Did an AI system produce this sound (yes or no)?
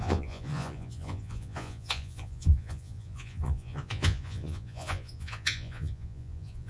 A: yes